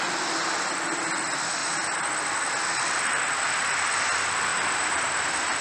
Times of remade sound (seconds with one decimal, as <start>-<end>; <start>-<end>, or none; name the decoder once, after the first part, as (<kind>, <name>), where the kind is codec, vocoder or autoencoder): 1.6-2.1 (vocoder, BigVGAN v2); 4.5-5.1